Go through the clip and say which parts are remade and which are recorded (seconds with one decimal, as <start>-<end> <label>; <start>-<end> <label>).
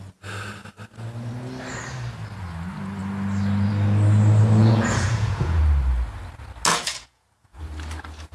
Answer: 0.0-4.6 recorded; 4.6-5.6 remade; 5.6-6.7 recorded; 6.7-7.6 remade; 7.6-8.3 recorded